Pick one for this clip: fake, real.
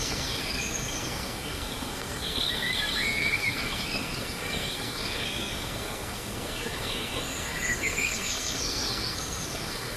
fake